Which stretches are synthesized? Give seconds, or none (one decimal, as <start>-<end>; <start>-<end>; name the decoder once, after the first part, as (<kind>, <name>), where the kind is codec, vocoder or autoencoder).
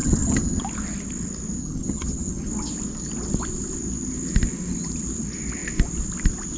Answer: 0.0-0.6 (vocoder, HiFi-GAN); 1.6-2.5